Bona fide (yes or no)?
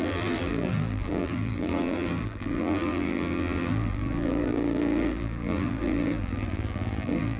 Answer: no